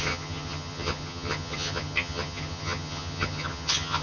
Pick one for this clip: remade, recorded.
remade